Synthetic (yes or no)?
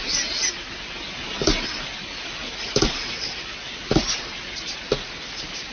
no